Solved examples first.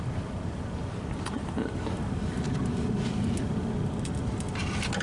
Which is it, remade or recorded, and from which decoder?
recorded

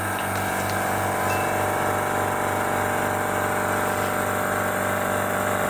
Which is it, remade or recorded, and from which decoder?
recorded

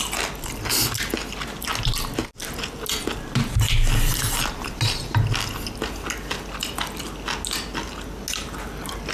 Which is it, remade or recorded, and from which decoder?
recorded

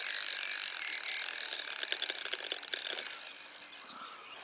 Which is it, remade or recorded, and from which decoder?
recorded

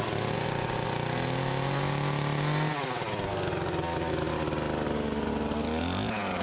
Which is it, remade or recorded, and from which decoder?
recorded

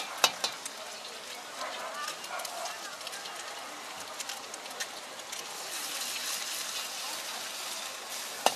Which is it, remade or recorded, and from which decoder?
recorded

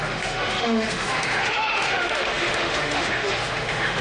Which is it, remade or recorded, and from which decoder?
remade, autoencoder, DAC-VAE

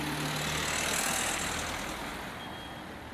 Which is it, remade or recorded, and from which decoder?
recorded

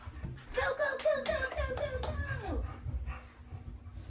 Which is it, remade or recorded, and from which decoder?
recorded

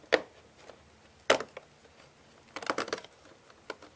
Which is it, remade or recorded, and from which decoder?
recorded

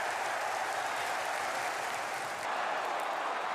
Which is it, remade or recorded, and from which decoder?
recorded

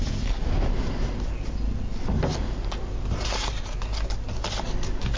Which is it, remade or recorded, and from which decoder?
recorded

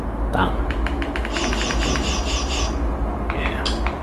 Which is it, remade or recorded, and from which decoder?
recorded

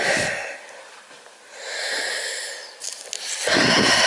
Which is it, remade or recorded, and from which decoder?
recorded